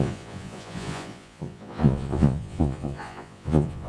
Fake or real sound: fake